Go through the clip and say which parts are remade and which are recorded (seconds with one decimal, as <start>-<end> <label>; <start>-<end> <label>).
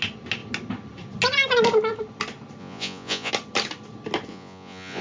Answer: 0.0-2.6 recorded; 2.6-3.3 remade; 3.3-4.3 recorded; 4.3-5.0 remade